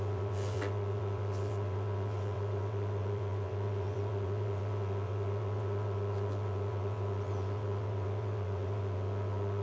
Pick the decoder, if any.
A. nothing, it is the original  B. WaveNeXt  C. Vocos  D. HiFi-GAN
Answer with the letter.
B